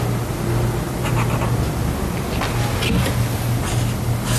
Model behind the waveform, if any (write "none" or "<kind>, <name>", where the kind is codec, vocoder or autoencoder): none